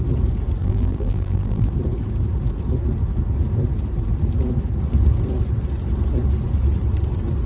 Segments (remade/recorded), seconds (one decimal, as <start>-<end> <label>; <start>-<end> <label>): 0.0-0.6 recorded; 0.6-1.7 remade; 1.7-7.5 recorded